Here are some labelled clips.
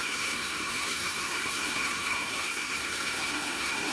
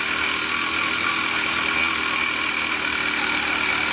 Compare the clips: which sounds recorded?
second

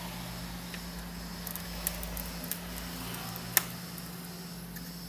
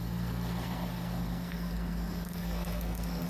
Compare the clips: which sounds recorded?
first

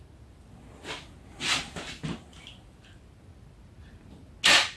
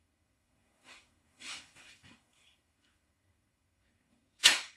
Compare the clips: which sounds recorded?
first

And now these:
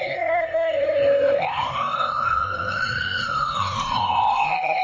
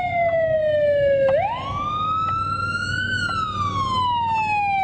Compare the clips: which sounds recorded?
second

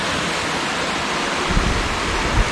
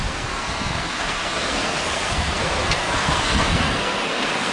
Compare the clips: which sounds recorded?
first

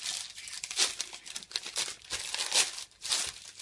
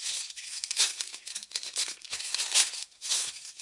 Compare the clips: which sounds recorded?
first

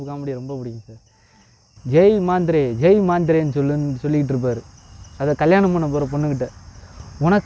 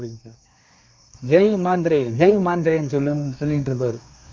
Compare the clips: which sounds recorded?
first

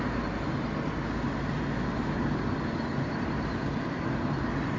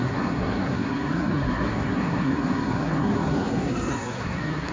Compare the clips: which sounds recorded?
first